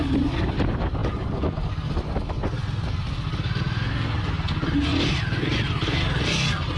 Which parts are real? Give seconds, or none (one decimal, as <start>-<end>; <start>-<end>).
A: 0.0-6.8